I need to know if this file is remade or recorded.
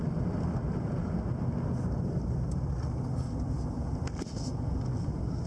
recorded